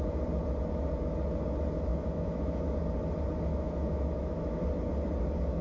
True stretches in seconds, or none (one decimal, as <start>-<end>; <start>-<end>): 0.0-1.9; 2.8-3.5; 4.6-5.6